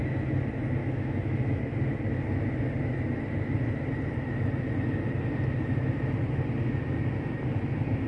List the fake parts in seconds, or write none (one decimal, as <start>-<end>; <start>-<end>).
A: 0.8-1.6